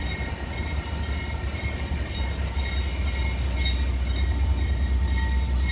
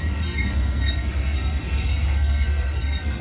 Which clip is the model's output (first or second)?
second